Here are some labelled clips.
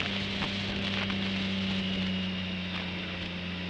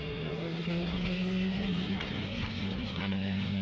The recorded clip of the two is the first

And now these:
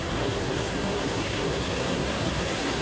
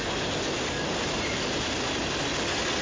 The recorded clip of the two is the second